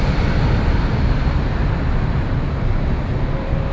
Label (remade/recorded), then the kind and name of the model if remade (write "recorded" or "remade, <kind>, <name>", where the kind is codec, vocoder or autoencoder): recorded